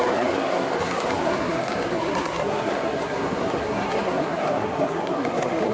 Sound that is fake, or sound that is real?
fake